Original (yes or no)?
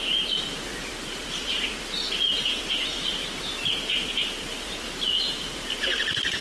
yes